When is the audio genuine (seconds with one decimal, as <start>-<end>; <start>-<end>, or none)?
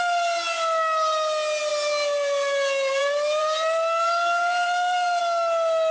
0.0-1.7; 5.2-5.9